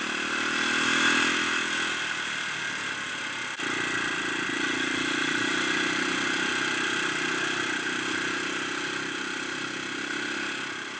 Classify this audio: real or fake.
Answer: real